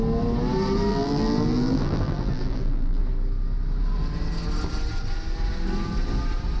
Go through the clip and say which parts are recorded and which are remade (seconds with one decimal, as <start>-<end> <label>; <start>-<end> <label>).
0.0-0.9 recorded; 0.9-3.0 remade; 3.0-6.6 recorded